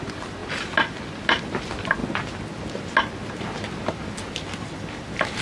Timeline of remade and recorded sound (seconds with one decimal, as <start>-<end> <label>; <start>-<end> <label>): 0.0-5.4 recorded